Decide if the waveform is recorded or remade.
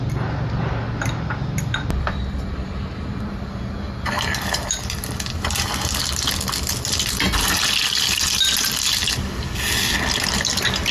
recorded